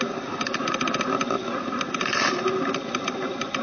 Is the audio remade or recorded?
recorded